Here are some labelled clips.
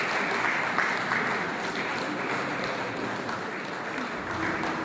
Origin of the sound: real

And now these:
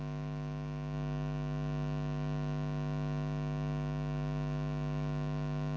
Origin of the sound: real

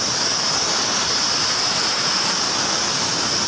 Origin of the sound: real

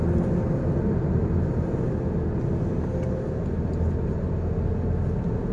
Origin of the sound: real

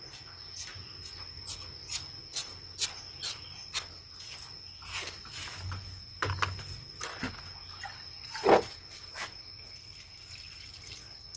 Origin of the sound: real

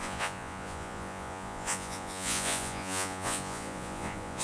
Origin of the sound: fake